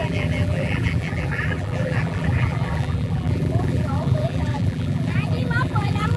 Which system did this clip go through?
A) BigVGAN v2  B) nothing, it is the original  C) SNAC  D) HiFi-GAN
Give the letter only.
A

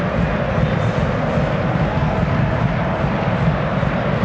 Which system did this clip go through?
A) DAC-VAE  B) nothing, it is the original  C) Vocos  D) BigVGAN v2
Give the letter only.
B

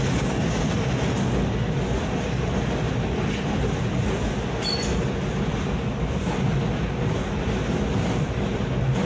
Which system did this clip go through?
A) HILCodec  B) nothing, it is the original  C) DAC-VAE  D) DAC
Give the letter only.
B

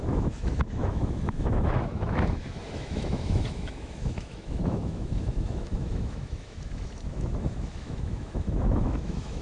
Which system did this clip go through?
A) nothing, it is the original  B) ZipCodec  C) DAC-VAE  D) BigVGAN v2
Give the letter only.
C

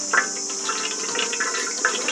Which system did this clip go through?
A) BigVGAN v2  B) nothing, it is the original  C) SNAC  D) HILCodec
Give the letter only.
B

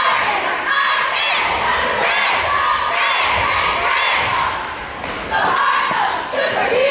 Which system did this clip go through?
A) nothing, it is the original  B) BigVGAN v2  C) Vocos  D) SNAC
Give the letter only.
A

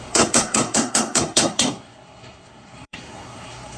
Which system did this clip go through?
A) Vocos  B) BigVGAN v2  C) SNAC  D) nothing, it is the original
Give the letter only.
C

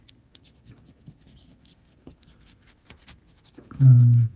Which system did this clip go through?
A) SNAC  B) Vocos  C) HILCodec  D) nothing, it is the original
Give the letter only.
A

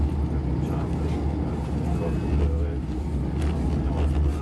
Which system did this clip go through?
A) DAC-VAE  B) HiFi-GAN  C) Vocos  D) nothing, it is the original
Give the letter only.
D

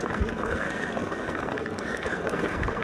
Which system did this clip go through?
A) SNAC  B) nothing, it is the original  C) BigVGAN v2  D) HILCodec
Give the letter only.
A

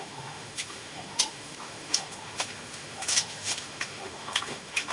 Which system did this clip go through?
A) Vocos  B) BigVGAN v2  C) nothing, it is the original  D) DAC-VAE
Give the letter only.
D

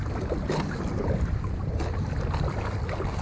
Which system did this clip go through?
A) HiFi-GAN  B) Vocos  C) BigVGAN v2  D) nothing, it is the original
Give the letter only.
D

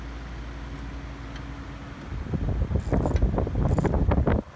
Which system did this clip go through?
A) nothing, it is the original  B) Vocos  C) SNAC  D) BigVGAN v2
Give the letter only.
A